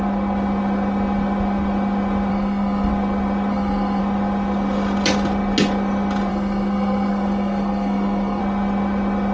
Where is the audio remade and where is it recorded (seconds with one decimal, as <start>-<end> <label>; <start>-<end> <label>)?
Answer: 0.0-2.3 recorded; 2.3-2.9 remade; 2.9-3.5 recorded; 3.5-4.0 remade; 4.0-6.3 recorded; 6.3-8.4 remade; 8.4-9.3 recorded